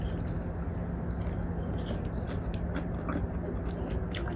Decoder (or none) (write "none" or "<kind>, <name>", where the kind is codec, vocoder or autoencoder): none